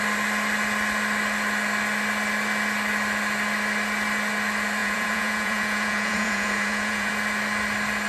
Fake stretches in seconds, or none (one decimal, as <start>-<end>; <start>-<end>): 4.8-7.1